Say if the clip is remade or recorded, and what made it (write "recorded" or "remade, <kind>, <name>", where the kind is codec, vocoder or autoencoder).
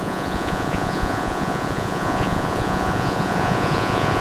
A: remade, vocoder, Vocos